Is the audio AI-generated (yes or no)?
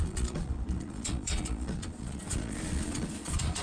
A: yes